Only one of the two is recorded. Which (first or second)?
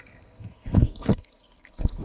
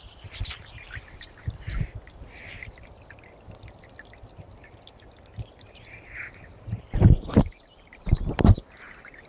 second